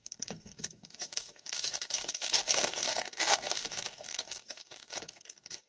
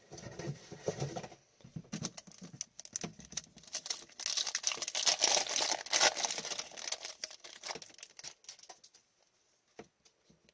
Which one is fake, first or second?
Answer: first